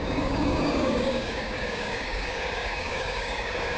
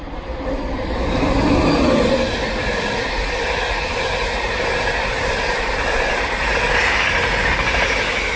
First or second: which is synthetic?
first